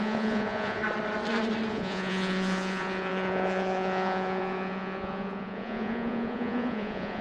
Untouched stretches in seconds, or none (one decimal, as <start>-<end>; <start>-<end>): 0.8-1.7